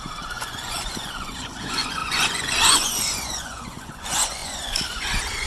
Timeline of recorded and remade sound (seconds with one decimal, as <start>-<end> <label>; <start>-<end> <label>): 0.0-5.5 remade